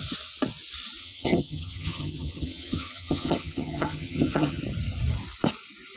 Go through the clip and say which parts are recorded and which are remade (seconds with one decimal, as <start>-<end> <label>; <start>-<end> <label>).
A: 0.0-1.0 recorded; 1.0-4.6 remade; 4.6-6.0 recorded